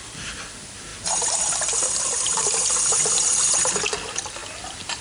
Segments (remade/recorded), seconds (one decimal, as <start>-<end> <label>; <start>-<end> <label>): 0.0-4.4 recorded; 4.4-5.0 remade